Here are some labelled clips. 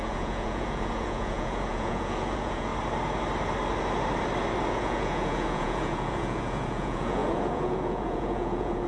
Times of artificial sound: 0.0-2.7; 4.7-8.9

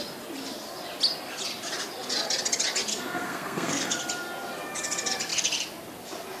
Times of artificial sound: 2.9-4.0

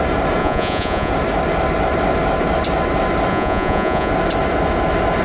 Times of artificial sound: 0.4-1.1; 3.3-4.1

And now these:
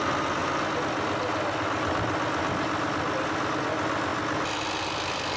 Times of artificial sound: none

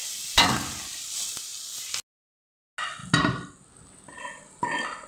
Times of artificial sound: none

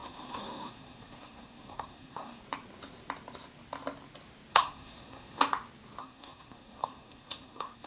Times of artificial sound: 0.0-2.4; 4.5-5.4; 6.0-7.9

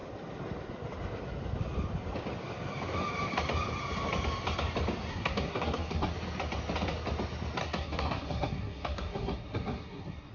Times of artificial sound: 5.1-6.1; 7.6-10.3